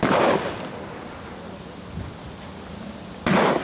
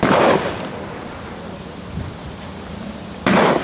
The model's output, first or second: second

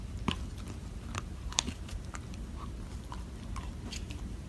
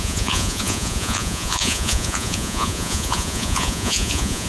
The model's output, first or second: second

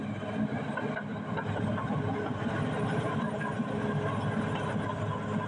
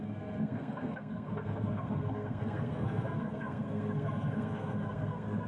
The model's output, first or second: second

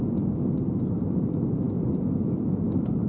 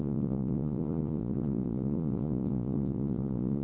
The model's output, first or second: second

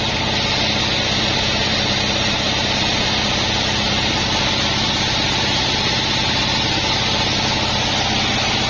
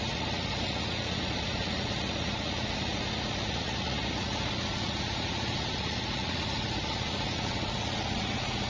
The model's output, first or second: second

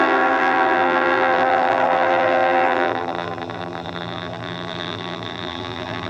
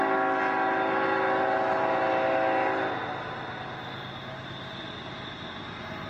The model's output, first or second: first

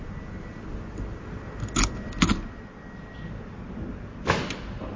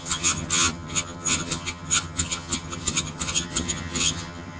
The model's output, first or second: second